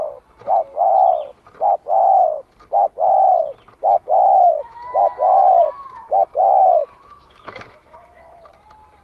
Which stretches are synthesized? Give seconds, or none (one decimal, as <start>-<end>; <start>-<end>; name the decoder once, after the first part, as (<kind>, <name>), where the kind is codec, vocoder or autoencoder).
3.8-8.4 (autoencoder, DAC-VAE)